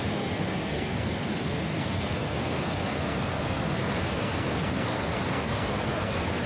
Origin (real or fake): fake